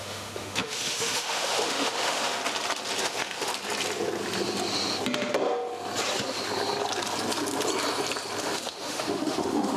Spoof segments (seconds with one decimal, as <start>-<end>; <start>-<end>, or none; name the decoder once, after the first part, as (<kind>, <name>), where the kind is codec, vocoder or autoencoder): 0.0-2.4 (autoencoder, DAC-VAE); 3.0-3.5; 8.4-9.8